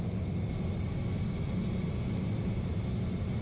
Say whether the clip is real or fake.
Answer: real